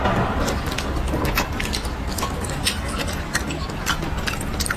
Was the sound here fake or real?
real